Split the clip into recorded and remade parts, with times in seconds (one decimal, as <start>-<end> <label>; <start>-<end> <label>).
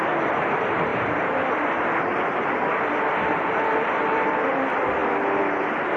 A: 0.0-0.9 remade; 0.9-1.5 recorded; 1.5-5.0 remade; 5.0-6.0 recorded